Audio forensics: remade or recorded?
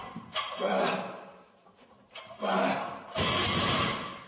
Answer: remade